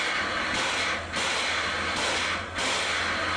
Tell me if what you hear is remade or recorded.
recorded